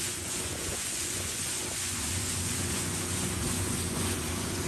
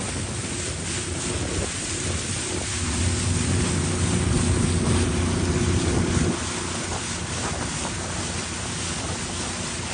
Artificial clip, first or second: first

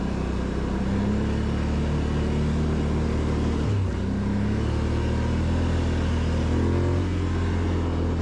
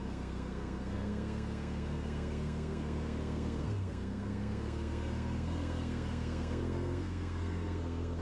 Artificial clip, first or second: second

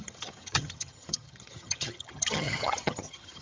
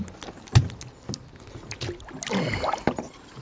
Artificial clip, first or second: first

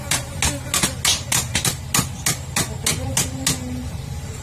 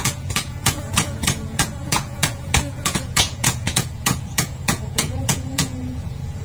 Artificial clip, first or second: second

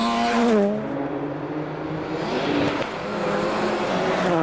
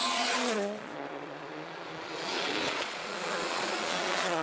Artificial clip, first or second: second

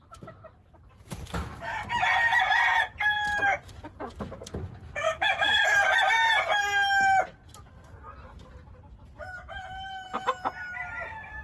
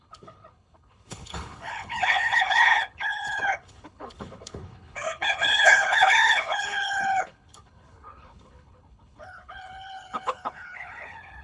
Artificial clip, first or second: second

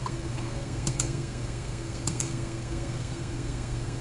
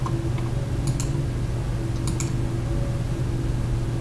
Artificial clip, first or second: first